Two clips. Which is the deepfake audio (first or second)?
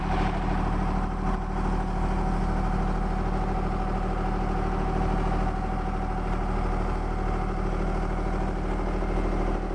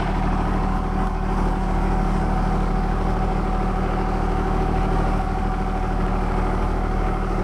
second